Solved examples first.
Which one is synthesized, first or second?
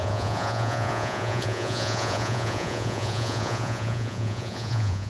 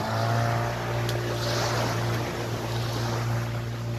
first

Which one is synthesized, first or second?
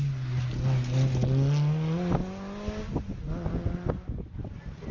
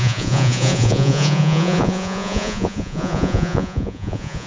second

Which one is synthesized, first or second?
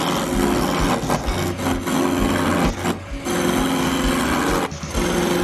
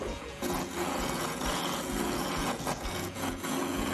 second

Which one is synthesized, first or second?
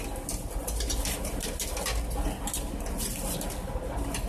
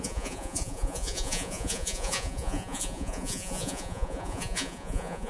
second